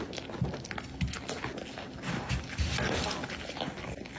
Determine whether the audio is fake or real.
real